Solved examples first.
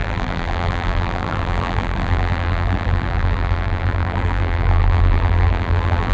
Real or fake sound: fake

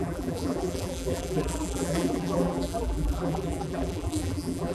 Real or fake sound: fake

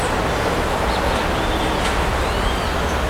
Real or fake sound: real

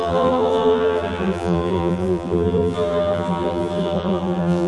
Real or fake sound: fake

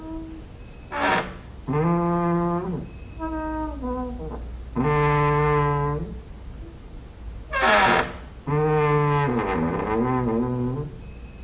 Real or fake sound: real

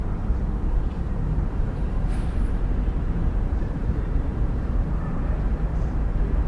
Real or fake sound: fake